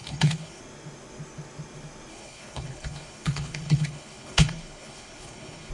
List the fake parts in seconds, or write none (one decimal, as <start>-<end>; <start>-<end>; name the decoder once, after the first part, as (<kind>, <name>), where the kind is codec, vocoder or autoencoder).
0.0-0.6 (codec, HILCodec); 2.1-5.7